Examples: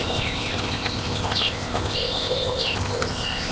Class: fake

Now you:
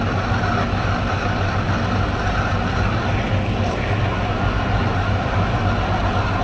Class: real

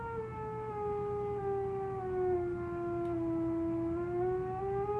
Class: real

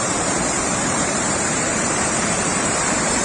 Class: fake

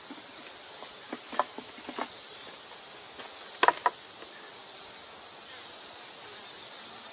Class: real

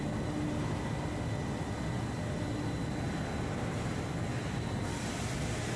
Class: real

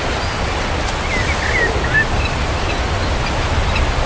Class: real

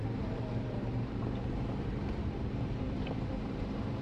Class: fake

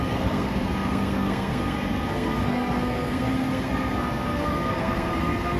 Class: fake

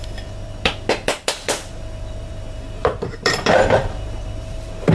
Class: fake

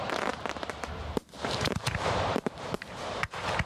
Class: fake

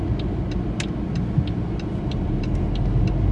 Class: real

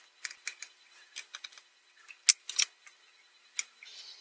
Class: real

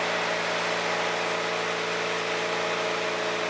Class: real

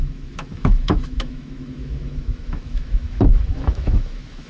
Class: fake